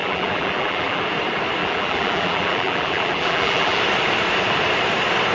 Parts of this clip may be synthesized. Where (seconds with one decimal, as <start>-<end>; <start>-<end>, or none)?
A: 0.0-1.0; 1.6-3.8